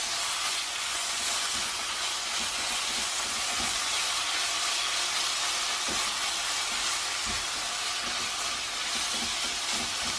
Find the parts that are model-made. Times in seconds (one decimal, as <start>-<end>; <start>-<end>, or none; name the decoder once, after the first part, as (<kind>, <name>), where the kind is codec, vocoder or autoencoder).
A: 0.5-3.9 (vocoder, Vocos)